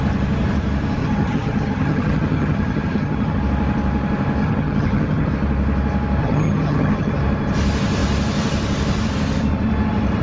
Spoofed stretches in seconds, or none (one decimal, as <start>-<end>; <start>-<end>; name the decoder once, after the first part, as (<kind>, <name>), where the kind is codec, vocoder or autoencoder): 1.0-3.4 (vocoder, HiFi-GAN); 4.4-5.3; 6.2-7.2